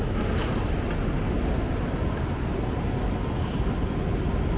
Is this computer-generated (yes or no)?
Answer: no